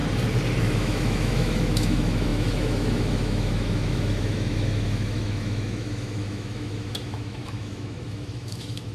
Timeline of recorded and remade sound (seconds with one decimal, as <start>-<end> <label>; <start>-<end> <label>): 0.0-0.6 recorded; 0.6-8.9 remade